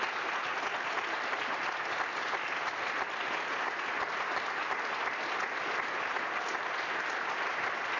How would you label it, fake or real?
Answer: real